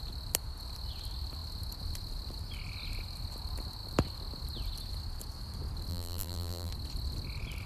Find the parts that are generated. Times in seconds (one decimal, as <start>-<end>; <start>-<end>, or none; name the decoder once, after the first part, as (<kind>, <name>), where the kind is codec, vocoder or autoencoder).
5.9-6.7 (vocoder, BigVGAN v2)